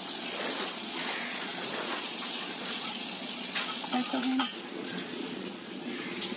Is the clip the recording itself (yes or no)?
no